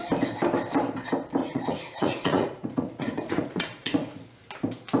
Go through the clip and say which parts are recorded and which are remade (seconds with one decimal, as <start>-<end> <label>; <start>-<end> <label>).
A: 0.0-1.4 recorded; 1.4-4.2 remade; 4.2-5.0 recorded